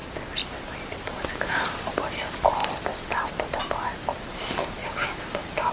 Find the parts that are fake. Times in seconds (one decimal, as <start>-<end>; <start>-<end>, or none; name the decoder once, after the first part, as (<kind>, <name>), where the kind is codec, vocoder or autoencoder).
4.8-5.7 (codec, DAC)

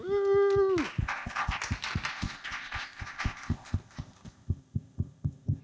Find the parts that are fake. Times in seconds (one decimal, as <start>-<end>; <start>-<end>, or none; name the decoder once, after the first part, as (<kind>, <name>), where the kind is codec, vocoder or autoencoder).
1.0-1.6 (codec, ZipCodec); 2.1-5.6

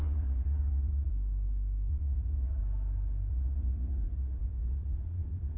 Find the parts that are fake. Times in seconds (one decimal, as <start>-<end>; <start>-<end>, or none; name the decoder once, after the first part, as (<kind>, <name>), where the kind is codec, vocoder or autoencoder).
0.0-1.1 (vocoder, Vocos); 1.9-2.6; 3.3-5.6

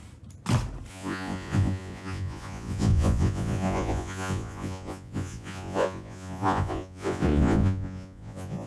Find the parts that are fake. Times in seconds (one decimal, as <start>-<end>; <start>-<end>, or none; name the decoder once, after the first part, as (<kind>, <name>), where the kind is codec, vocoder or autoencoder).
0.9-8.7 (vocoder, Vocos)

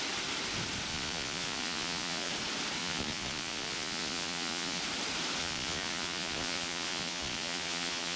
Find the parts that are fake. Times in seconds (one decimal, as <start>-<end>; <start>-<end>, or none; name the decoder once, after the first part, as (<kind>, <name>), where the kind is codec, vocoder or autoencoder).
0.9-2.3 (vocoder, Vocos); 2.8-4.8; 5.4-8.2

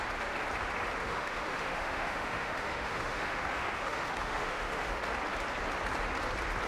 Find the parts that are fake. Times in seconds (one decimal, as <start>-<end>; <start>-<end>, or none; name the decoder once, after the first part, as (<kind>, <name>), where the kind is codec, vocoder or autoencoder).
1.0-5.0 (autoencoder, DAC-VAE)

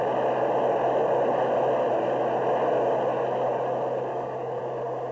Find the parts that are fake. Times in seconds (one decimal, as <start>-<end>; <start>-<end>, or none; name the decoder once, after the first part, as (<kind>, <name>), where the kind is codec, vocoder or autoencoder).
4.1-4.6 (codec, DAC)